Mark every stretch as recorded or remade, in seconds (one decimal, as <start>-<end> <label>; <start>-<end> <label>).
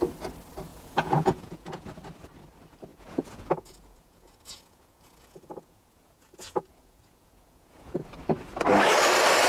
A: 0.0-0.7 recorded; 0.7-2.0 remade; 2.0-2.9 recorded; 2.9-8.1 remade; 8.1-9.5 recorded